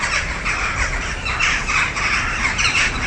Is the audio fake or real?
real